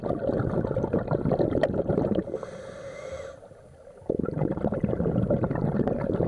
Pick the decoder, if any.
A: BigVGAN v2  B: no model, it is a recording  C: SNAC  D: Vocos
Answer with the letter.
B